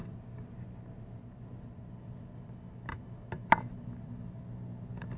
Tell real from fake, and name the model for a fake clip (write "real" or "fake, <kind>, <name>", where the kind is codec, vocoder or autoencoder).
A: real